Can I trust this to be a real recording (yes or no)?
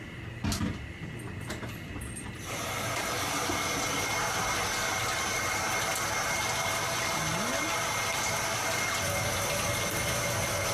yes